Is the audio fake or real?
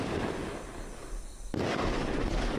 real